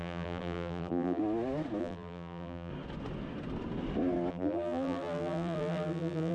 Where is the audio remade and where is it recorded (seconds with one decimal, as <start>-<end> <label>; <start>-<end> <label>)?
0.0-1.2 remade; 1.2-1.8 recorded; 1.8-2.7 remade; 2.7-4.3 recorded; 4.3-6.3 remade